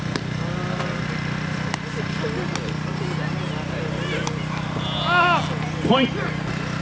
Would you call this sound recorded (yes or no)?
yes